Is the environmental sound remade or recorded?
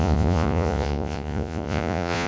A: remade